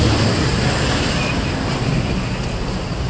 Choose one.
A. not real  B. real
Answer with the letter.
B